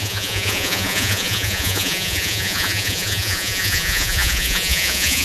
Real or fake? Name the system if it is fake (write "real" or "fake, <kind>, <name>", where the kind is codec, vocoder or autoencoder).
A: fake, vocoder, Vocos